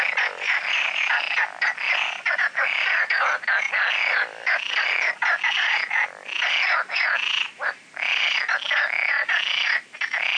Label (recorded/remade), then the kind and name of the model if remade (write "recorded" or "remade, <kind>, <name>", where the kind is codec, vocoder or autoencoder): recorded